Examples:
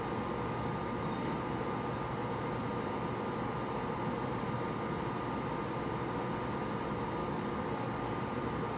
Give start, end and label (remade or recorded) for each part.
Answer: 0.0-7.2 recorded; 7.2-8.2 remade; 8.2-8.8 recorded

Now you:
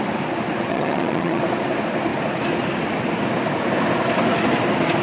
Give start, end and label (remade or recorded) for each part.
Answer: 0.0-0.7 recorded; 0.7-1.4 remade; 1.4-5.0 recorded

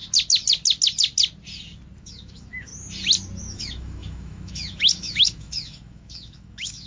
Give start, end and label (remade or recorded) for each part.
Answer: 0.0-2.0 recorded; 2.0-2.7 remade; 2.7-3.4 recorded; 3.4-6.9 remade

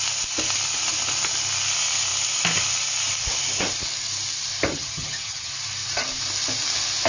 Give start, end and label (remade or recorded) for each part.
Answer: 0.0-4.7 recorded; 4.7-5.5 remade; 5.5-7.1 recorded